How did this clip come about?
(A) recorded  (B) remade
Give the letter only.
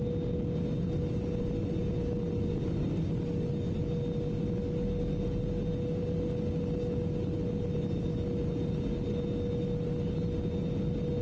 A